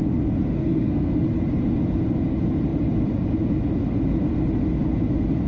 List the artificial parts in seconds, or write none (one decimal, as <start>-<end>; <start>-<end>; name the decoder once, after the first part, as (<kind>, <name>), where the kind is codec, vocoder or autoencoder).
0.5-1.1 (codec, SNAC)